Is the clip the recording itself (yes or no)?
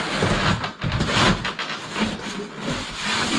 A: yes